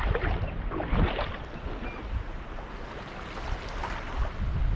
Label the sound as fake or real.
real